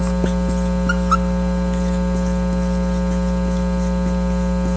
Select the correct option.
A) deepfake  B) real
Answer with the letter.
B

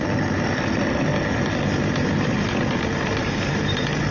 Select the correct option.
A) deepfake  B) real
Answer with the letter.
B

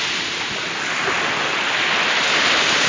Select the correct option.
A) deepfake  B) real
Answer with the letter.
B